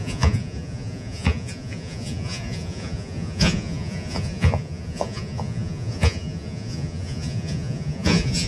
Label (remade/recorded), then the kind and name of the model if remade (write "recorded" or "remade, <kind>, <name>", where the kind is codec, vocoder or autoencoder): remade, vocoder, Vocos